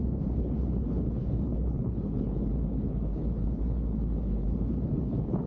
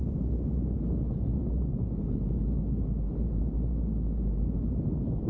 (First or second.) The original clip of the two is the second